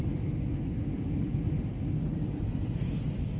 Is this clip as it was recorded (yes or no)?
yes